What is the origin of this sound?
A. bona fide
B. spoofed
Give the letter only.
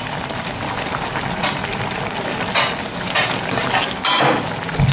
A